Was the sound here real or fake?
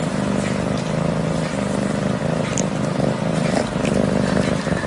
real